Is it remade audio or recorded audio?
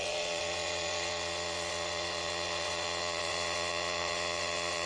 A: remade